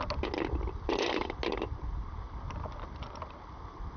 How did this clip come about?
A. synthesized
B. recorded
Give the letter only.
B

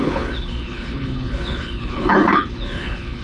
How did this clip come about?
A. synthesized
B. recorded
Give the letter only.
A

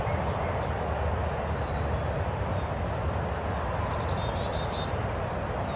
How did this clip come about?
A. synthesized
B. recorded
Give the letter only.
B